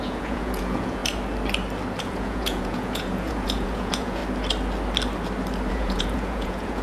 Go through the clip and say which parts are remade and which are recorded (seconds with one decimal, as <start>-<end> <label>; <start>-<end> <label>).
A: 0.0-1.0 remade; 1.0-2.0 recorded; 2.0-4.2 remade; 4.2-5.7 recorded; 5.7-6.8 remade